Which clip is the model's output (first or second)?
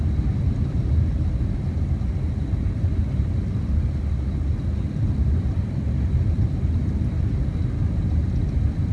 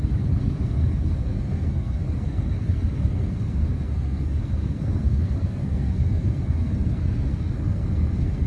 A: second